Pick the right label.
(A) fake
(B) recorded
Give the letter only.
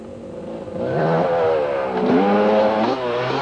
B